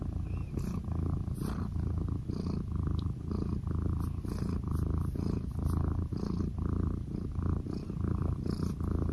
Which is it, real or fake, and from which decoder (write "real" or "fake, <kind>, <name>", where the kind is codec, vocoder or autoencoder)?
real